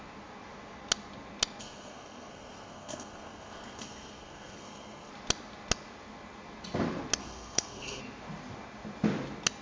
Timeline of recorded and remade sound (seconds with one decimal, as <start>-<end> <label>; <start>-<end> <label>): 0.0-1.6 recorded; 1.6-5.1 remade; 5.1-7.2 recorded; 7.2-8.0 remade; 8.0-9.6 recorded